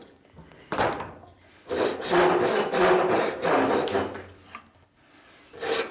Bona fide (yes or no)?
yes